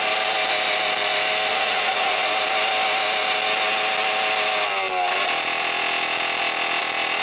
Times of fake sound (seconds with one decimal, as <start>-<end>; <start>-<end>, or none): 1.5-2.3